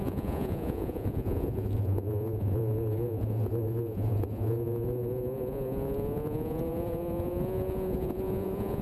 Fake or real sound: fake